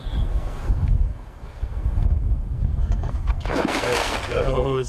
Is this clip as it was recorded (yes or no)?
no